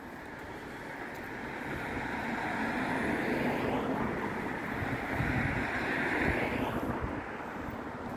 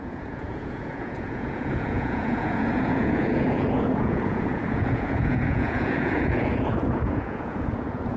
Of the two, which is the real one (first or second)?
first